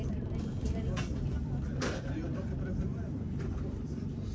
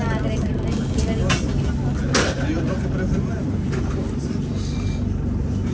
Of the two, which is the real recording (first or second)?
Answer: second